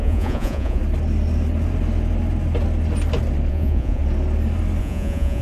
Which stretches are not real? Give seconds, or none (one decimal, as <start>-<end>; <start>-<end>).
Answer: 0.0-0.8; 3.5-4.0; 4.8-5.4